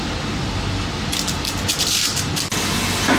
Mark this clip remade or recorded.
recorded